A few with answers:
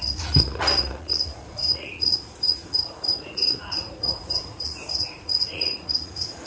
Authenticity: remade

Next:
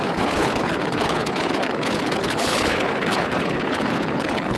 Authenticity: remade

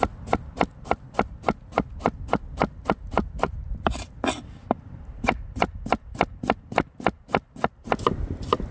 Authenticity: recorded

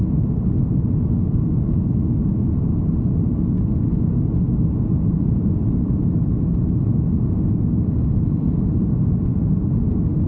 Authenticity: recorded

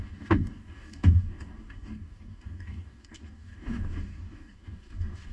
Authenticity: remade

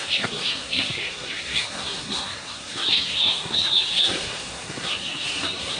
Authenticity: remade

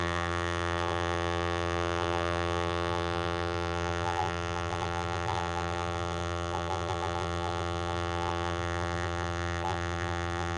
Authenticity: remade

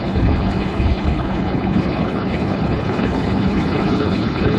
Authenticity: remade